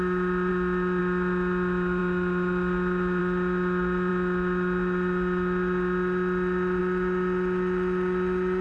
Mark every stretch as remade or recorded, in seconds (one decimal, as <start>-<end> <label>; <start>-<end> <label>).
0.0-8.6 recorded